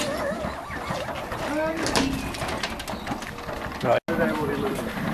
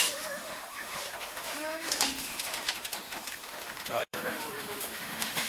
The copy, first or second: second